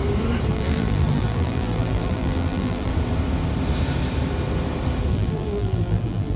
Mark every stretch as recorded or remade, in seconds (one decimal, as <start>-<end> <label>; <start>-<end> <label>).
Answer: 0.0-0.5 recorded; 0.5-2.9 remade; 2.9-5.1 recorded; 5.1-6.4 remade